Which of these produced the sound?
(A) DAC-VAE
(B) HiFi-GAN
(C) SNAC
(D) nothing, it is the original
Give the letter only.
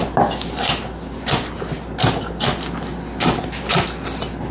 D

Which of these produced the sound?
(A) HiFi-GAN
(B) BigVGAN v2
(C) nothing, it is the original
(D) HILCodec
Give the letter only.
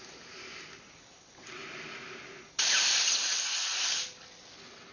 C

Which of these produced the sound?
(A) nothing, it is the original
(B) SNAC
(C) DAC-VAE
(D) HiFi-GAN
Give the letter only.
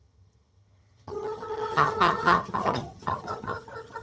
D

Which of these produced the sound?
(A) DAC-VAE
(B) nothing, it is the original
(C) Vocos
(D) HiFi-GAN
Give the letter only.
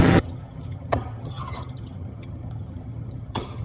D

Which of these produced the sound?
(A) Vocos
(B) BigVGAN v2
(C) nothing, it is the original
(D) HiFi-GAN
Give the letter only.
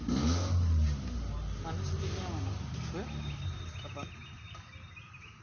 C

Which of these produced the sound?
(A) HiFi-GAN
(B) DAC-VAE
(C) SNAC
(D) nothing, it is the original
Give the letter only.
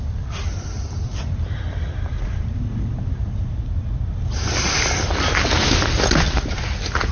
D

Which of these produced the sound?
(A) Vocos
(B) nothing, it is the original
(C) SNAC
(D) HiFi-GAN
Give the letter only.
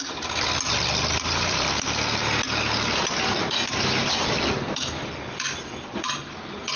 B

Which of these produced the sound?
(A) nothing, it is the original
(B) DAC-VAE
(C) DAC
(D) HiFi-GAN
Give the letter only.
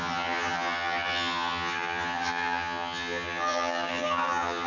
D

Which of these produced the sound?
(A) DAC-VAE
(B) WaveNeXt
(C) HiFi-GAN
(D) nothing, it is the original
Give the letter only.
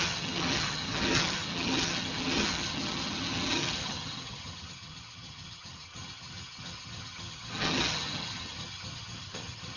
C